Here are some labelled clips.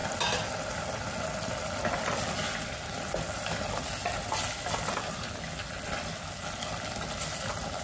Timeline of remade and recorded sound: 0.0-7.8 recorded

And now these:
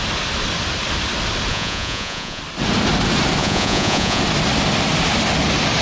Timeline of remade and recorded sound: 0.0-1.5 recorded; 1.5-2.4 remade; 2.4-3.4 recorded; 3.4-4.2 remade; 4.2-5.8 recorded

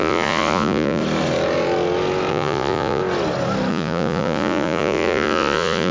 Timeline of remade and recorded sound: 0.0-1.0 remade; 1.0-2.3 recorded; 2.3-3.0 remade; 3.0-3.7 recorded; 3.7-5.9 remade

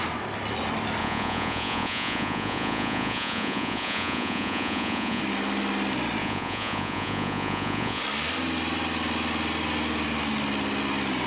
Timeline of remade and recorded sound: 0.0-1.0 recorded; 1.0-5.2 remade; 5.2-6.2 recorded; 6.2-8.0 remade; 8.0-11.3 recorded

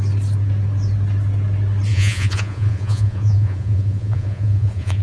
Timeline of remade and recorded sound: 0.0-1.9 recorded; 1.9-5.0 remade